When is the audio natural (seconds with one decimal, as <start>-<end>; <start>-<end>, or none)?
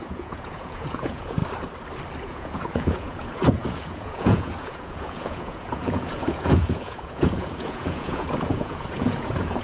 1.4-2.2